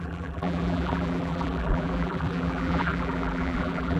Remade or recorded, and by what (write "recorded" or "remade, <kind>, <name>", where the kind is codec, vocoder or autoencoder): remade, vocoder, BigVGAN v2